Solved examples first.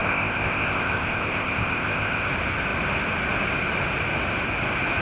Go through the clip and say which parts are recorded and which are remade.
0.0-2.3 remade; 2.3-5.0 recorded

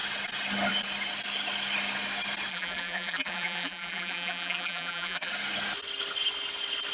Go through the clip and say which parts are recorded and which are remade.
0.0-2.5 recorded; 2.5-5.3 remade; 5.3-6.9 recorded

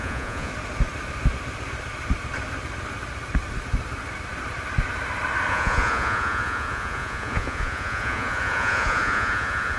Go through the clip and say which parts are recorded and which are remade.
0.0-0.5 remade; 0.5-5.5 recorded; 5.5-9.8 remade

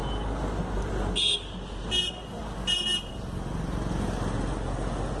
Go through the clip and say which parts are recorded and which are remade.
0.0-5.2 recorded

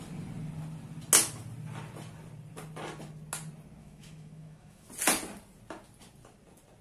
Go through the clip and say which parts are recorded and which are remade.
0.0-3.8 recorded; 3.8-4.9 remade; 4.9-6.8 recorded

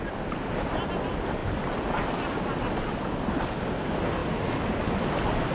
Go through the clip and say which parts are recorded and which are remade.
0.0-5.5 recorded

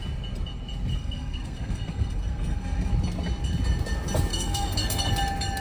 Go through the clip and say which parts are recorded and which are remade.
0.0-0.9 recorded; 0.9-2.9 remade; 2.9-4.3 recorded; 4.3-5.1 remade; 5.1-5.6 recorded

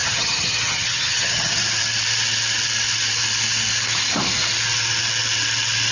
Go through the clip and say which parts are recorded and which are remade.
0.0-1.5 remade; 1.5-5.9 recorded